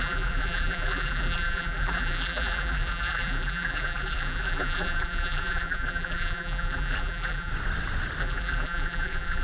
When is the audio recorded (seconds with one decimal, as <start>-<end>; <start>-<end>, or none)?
7.5-8.2

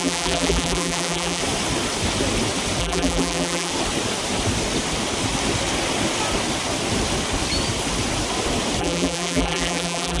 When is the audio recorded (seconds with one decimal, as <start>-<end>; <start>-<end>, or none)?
1.4-2.8; 3.7-8.8